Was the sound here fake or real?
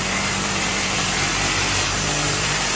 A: fake